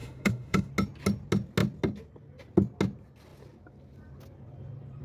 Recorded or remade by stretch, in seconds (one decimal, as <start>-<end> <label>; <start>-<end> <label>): 0.0-0.7 remade; 0.7-5.0 recorded